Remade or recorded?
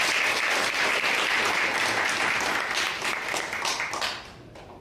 recorded